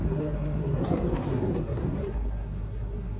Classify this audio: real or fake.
fake